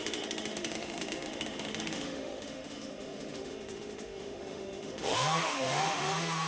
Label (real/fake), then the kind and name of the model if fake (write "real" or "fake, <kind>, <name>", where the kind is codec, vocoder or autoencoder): fake, autoencoder, DAC-VAE